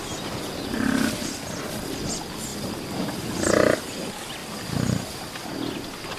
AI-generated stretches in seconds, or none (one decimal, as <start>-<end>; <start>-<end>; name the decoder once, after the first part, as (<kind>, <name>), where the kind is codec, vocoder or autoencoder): 2.5-3.8 (vocoder, BigVGAN v2)